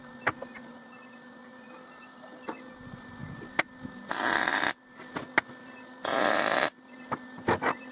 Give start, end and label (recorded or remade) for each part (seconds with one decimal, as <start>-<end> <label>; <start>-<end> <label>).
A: 0.0-7.9 recorded

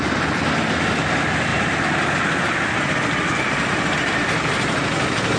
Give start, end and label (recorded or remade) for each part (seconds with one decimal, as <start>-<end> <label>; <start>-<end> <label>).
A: 0.0-5.4 recorded

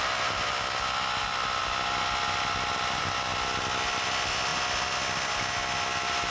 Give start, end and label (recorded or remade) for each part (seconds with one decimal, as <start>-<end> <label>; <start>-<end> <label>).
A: 0.0-6.3 recorded

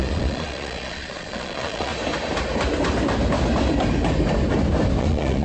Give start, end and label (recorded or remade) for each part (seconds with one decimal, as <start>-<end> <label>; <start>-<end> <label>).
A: 0.0-1.9 remade; 1.9-5.0 recorded; 5.0-5.4 remade

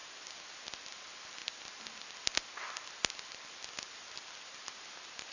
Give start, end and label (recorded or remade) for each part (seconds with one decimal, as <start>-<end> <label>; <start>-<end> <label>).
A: 0.0-5.3 recorded

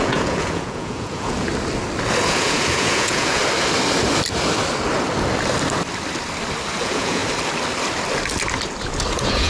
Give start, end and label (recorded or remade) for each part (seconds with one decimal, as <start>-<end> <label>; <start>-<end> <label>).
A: 0.0-1.5 remade; 1.5-2.2 recorded; 2.2-3.4 remade; 3.4-6.8 recorded; 6.8-7.2 remade; 7.2-9.1 recorded; 9.1-9.5 remade

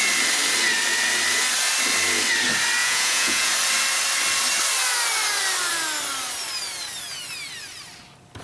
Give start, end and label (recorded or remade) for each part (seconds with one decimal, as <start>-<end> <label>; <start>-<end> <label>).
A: 0.0-2.8 recorded; 2.8-3.5 remade; 3.5-8.4 recorded

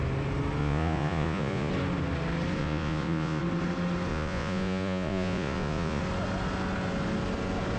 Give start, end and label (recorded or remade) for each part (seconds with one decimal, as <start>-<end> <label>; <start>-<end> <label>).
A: 0.0-0.6 recorded; 0.6-1.7 remade; 1.7-2.6 recorded; 2.6-3.4 remade; 3.4-4.1 recorded; 4.1-6.0 remade; 6.0-7.8 recorded